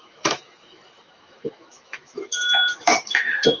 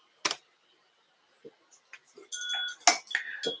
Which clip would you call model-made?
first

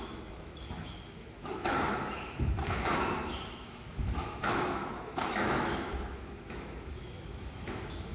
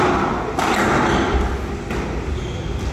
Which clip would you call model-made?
first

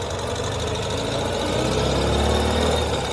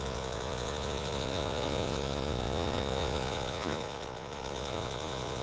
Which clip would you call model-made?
second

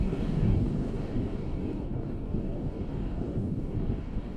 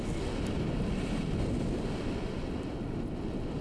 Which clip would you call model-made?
first